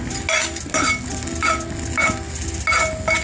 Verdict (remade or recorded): recorded